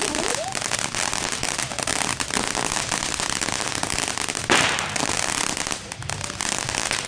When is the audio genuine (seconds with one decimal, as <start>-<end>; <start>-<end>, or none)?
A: 0.0-7.1